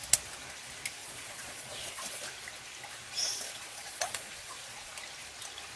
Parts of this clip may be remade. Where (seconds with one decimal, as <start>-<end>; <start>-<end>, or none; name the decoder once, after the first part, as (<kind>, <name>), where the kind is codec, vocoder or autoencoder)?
1.0-2.2 (vocoder, Vocos); 3.2-4.9